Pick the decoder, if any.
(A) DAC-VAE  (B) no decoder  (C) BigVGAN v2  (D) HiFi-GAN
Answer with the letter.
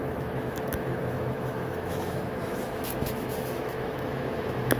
A